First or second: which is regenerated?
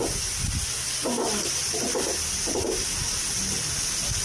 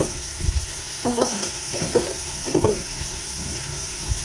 second